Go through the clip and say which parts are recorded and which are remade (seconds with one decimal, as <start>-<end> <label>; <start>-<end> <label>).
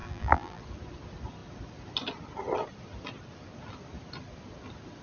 0.0-0.6 remade; 0.6-5.0 recorded